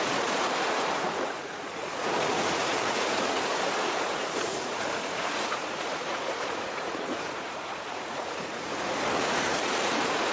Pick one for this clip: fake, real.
fake